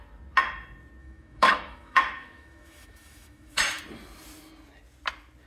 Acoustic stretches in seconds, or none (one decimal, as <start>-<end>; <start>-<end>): 0.0-1.0; 3.8-5.5